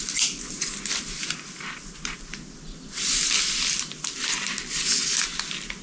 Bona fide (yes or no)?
yes